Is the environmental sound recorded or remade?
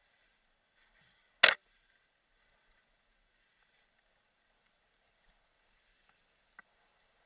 recorded